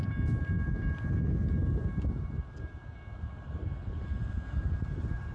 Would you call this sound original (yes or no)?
yes